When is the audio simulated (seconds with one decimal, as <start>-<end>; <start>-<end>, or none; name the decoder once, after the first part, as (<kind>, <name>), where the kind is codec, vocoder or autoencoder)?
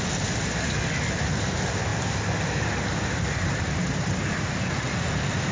none